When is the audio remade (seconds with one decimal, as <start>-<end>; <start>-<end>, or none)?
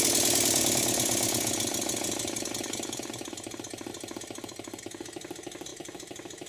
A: none